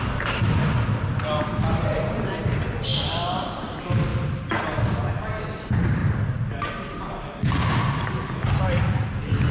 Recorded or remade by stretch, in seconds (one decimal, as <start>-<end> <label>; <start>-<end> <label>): 0.0-9.5 recorded